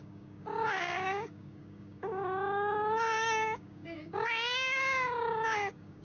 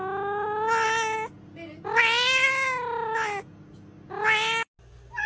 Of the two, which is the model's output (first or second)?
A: first